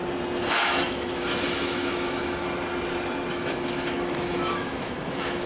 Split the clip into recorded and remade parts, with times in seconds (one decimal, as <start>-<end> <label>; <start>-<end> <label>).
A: 0.0-0.5 recorded; 0.5-2.4 remade; 2.4-3.3 recorded; 3.3-5.5 remade